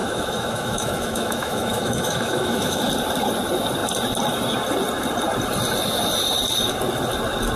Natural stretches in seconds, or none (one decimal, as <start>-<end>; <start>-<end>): 2.9-7.6

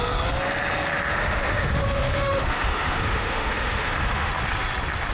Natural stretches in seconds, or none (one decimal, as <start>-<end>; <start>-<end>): 0.0-1.2; 4.3-5.1